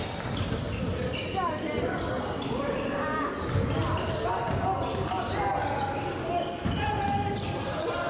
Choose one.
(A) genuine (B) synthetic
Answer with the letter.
A